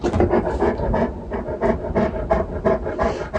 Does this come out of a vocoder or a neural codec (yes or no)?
no